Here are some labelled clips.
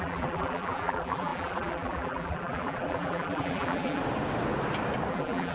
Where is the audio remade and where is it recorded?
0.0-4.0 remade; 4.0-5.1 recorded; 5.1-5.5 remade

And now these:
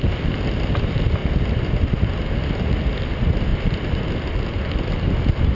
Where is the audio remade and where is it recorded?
0.0-5.5 recorded

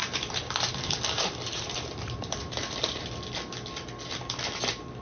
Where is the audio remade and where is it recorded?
0.0-3.0 remade; 3.0-5.0 recorded